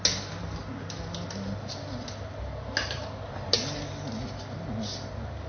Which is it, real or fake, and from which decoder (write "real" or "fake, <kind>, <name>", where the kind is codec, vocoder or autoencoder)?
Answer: real